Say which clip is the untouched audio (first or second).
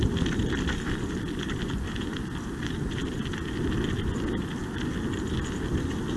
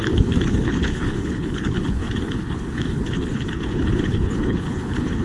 first